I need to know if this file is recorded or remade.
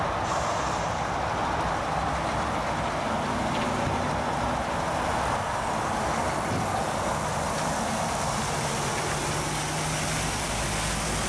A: recorded